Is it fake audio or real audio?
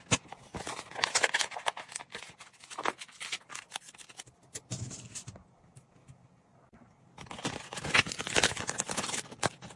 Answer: real